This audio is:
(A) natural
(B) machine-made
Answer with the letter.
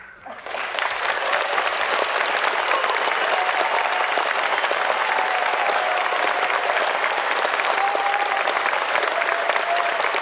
B